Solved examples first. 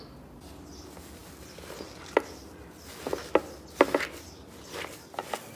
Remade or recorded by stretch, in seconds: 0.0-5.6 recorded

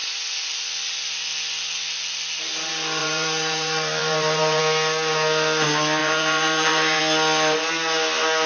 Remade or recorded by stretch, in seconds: 0.0-3.0 recorded; 3.0-4.6 remade; 4.6-6.0 recorded; 6.0-7.0 remade; 7.0-8.5 recorded